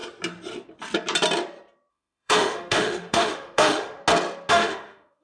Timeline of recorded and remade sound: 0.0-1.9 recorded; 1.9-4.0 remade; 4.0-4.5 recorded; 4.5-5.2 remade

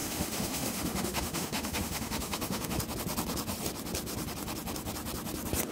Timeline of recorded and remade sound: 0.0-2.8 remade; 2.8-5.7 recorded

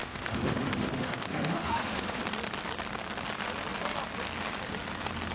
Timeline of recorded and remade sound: 0.0-2.2 remade; 2.2-5.3 recorded

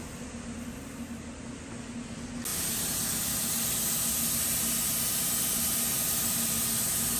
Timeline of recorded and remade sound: 0.0-7.2 recorded

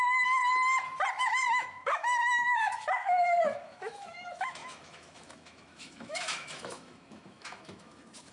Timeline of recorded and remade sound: 0.0-0.4 remade; 0.4-1.2 recorded; 1.2-8.3 remade

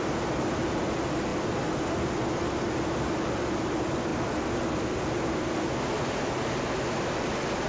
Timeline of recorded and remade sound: 0.0-7.7 recorded